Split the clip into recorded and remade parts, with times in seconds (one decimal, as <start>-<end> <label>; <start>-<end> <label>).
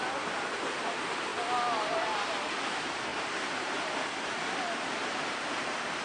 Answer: 0.0-1.3 remade; 1.3-2.7 recorded; 2.7-6.0 remade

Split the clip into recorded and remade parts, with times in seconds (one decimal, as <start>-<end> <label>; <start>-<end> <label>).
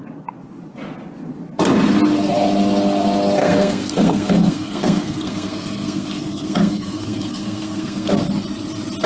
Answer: 0.0-3.4 recorded; 3.4-8.1 remade; 8.1-9.1 recorded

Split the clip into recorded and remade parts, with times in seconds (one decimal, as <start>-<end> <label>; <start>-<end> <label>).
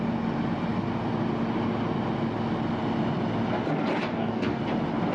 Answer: 0.0-4.1 recorded; 4.1-4.6 remade; 4.6-5.1 recorded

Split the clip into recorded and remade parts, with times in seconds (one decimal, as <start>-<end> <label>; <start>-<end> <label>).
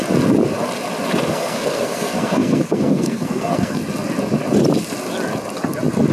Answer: 0.0-1.3 recorded; 1.3-3.8 remade; 3.8-6.1 recorded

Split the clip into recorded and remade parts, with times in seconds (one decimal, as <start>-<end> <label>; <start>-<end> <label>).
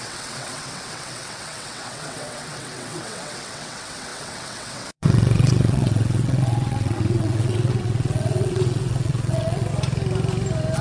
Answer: 0.0-9.7 remade; 9.7-10.8 recorded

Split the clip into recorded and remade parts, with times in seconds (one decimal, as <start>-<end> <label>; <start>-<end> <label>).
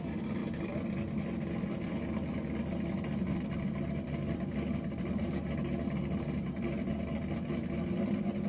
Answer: 0.0-8.5 recorded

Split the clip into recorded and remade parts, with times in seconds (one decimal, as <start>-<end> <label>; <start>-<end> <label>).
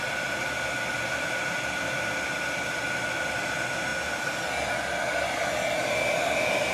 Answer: 0.0-6.7 recorded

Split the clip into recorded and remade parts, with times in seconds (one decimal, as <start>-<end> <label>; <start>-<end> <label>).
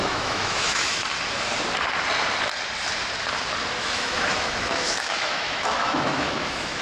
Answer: 0.0-1.0 remade; 1.0-3.8 recorded; 3.8-6.8 remade